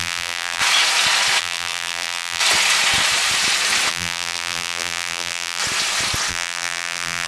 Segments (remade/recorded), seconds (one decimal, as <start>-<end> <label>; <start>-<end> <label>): 0.0-0.6 remade; 0.6-1.4 recorded; 1.4-2.4 remade; 2.4-3.9 recorded; 3.9-5.6 remade; 5.6-6.3 recorded; 6.3-7.3 remade